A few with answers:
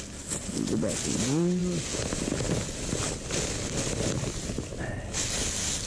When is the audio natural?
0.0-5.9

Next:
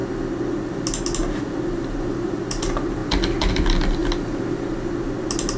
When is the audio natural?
0.0-1.2; 2.4-5.6

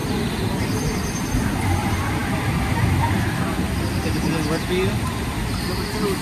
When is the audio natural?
0.0-6.2

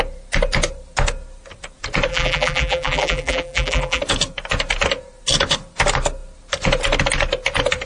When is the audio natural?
0.0-2.1; 4.0-7.9

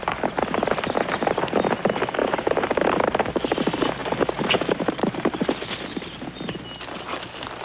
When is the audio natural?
0.0-2.2; 3.0-4.0; 5.7-7.6

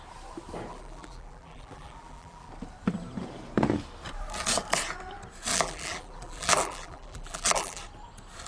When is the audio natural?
0.0-0.7; 2.5-5.5; 7.8-8.5

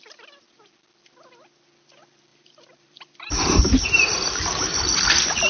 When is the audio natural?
0.0-2.3; 4.3-5.5